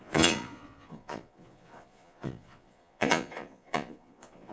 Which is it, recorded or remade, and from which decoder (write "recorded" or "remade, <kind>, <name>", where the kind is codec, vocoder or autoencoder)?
remade, vocoder, Vocos